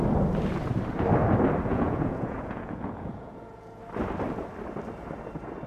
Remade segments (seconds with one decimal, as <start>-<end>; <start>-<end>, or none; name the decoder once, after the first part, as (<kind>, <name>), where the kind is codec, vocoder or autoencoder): 1.7-3.8 (vocoder, Vocos)